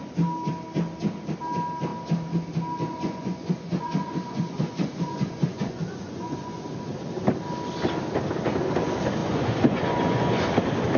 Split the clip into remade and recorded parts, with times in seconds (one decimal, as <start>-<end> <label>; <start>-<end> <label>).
0.0-2.9 recorded; 2.9-6.7 remade; 6.7-9.2 recorded; 9.2-10.5 remade; 10.5-11.0 recorded